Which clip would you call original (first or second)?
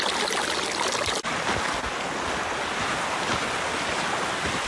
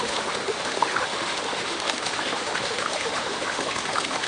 first